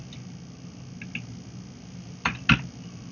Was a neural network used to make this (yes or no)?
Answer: no